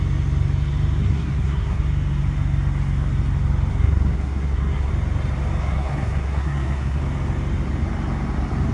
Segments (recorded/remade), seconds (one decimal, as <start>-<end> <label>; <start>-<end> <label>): 0.0-1.0 recorded; 1.0-1.8 remade; 1.8-3.7 recorded; 3.7-4.9 remade; 4.9-5.6 recorded; 5.6-7.0 remade; 7.0-8.7 recorded